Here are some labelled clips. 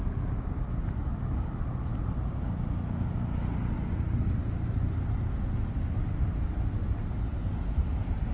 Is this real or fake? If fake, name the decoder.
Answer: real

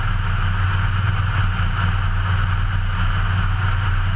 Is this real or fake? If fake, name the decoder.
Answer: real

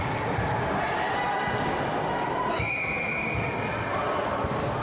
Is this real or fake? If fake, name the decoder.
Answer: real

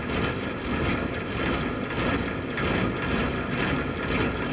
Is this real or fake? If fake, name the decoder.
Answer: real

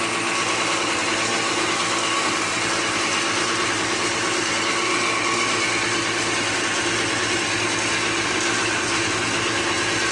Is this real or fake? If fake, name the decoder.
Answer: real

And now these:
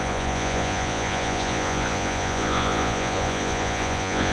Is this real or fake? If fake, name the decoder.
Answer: fake, vocoder, Vocos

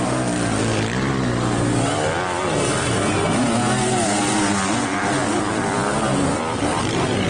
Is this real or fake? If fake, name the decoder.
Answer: real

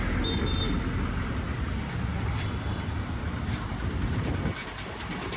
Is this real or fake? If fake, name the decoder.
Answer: real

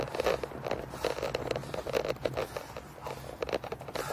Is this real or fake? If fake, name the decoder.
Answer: real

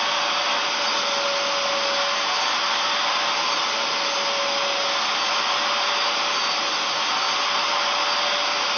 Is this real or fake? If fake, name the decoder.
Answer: real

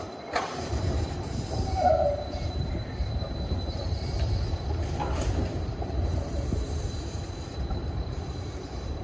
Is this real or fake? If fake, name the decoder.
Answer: fake, vocoder, BigVGAN v2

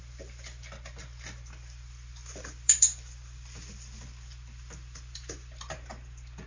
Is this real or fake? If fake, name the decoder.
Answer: real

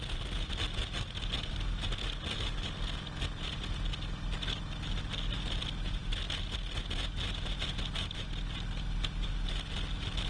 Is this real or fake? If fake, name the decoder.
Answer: real